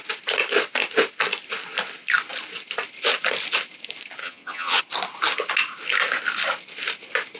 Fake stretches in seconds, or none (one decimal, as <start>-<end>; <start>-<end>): 4.2-4.8